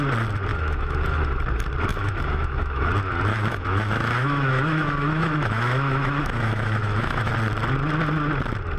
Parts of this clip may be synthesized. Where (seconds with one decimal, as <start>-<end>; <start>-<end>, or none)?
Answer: 0.5-1.4; 1.9-2.9; 3.3-7.3